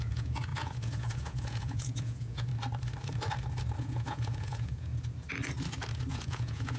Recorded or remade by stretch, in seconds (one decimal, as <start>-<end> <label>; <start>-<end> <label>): 0.0-2.5 remade; 2.5-3.8 recorded; 3.8-4.9 remade; 4.9-6.1 recorded; 6.1-6.8 remade